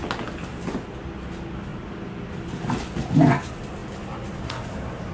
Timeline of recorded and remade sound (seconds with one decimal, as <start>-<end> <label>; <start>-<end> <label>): 0.0-5.1 recorded